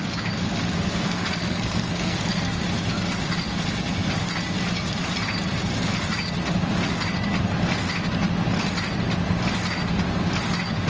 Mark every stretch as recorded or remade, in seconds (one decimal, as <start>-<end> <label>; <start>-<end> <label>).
0.0-1.0 recorded; 1.0-2.6 remade; 2.6-10.9 recorded